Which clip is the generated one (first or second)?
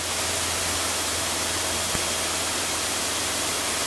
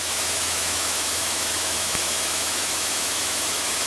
second